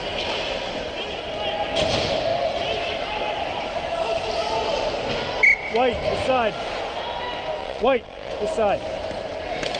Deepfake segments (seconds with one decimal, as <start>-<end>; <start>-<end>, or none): 7.6-8.3